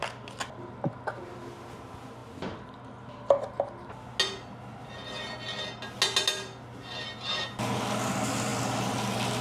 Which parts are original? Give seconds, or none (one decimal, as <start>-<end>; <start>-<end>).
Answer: 0.0-9.4